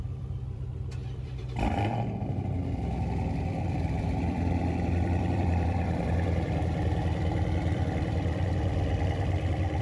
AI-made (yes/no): yes